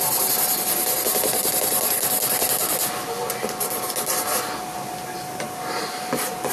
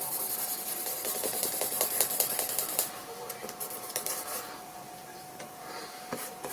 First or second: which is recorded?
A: first